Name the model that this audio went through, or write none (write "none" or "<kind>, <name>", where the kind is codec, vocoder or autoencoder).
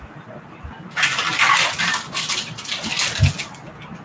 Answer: none